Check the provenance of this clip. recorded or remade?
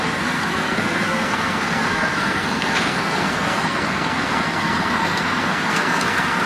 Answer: remade